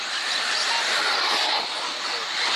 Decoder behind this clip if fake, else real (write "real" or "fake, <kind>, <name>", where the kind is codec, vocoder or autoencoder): real